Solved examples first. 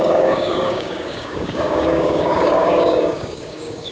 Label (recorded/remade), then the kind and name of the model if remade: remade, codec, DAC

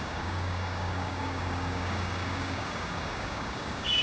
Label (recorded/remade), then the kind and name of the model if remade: remade, codec, DAC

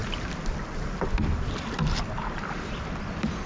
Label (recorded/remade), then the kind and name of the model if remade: recorded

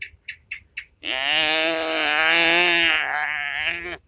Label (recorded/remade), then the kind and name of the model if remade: recorded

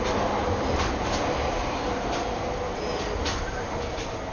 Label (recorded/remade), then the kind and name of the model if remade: recorded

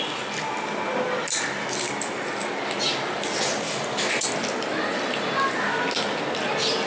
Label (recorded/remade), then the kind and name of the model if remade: recorded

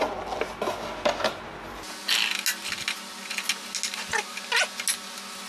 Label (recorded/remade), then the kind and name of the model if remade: recorded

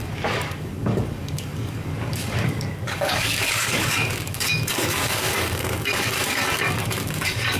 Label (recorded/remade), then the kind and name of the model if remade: remade, codec, DAC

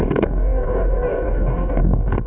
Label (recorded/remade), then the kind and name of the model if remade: remade, codec, DAC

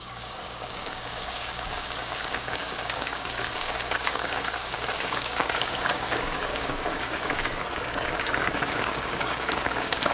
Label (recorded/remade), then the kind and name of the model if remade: remade, codec, DAC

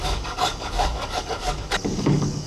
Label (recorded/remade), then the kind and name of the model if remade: remade, codec, DAC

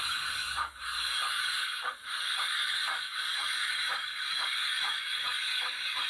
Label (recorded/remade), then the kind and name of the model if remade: remade, codec, DAC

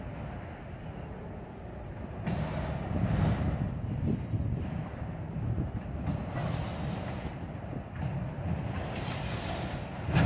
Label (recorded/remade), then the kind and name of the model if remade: recorded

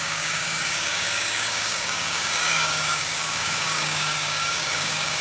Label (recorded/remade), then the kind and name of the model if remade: remade, codec, DAC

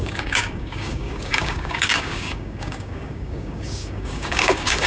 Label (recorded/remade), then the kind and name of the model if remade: remade, codec, DAC